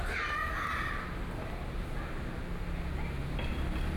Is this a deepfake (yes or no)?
no